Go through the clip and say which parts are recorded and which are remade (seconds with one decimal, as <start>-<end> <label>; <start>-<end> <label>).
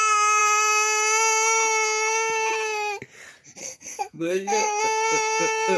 0.0-3.6 recorded; 3.6-4.8 remade; 4.8-5.8 recorded